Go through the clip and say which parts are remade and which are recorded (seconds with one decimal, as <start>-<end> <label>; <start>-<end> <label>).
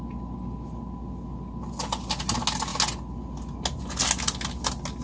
0.0-5.0 recorded